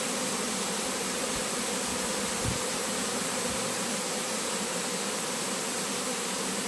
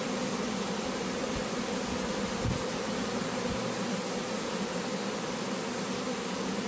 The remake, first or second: first